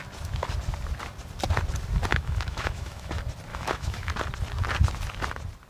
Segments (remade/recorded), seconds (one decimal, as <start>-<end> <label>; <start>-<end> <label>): 0.0-2.1 recorded; 2.1-3.1 remade; 3.1-3.5 recorded; 3.5-4.1 remade; 4.1-5.7 recorded